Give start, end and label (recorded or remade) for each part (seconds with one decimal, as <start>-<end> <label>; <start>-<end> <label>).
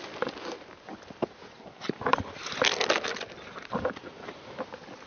0.0-5.1 recorded